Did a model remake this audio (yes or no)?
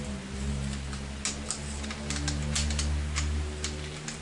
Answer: no